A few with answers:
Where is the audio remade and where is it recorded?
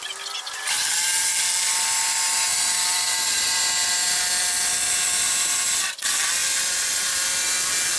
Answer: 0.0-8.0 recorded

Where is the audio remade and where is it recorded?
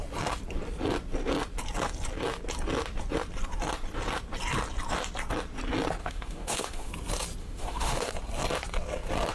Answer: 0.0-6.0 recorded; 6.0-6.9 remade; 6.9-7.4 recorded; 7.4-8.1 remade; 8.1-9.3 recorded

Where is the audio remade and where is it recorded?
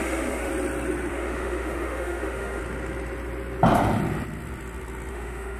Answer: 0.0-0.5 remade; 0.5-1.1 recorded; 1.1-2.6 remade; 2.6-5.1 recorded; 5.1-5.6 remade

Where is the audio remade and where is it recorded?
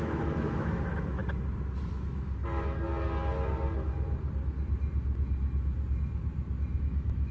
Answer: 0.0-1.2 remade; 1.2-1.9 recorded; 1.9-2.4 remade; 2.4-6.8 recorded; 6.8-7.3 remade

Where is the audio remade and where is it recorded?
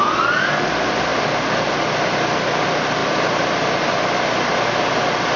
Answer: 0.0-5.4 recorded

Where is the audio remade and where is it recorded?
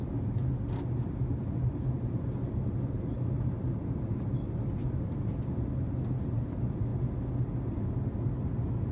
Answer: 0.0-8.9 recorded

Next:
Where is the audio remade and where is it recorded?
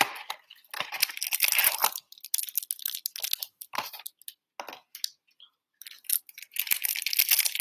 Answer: 0.0-7.6 recorded